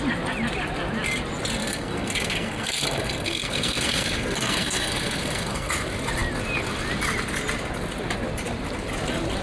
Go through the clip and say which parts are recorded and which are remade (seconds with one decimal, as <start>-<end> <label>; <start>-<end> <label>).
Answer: 0.0-1.6 recorded; 1.6-5.7 remade; 5.7-9.4 recorded

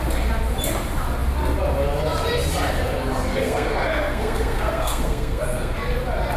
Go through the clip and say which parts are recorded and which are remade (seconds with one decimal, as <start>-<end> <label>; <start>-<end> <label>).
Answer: 0.0-3.3 recorded; 3.3-5.7 remade; 5.7-6.4 recorded